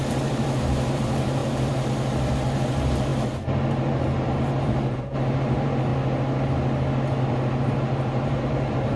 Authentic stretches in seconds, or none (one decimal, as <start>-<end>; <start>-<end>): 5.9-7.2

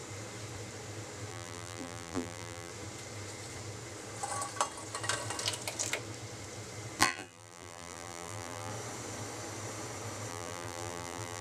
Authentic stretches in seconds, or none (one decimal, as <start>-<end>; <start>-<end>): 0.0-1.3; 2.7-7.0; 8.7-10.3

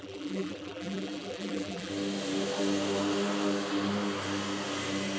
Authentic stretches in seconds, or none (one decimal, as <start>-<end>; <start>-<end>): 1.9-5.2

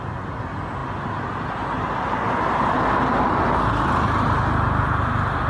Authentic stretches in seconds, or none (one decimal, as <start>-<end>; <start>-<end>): 0.0-5.5

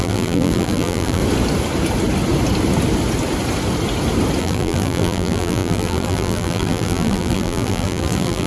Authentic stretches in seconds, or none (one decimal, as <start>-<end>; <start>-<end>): 1.2-4.4

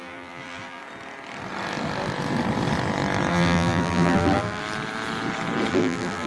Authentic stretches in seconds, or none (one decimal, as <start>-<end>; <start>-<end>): 0.8-3.3; 4.6-5.7

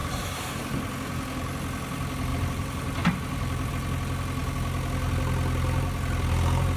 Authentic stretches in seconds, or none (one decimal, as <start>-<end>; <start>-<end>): 0.5-2.3; 3.7-6.8